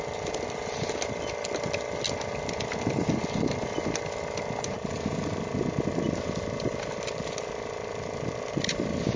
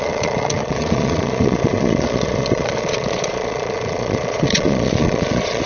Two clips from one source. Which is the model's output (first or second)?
second